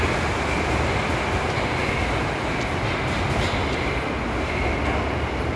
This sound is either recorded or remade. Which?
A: recorded